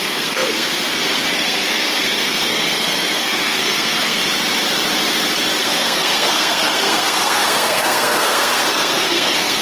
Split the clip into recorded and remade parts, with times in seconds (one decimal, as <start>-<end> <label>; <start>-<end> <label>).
0.0-4.2 remade; 4.2-5.6 recorded; 5.6-9.6 remade